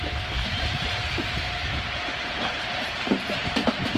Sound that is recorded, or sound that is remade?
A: remade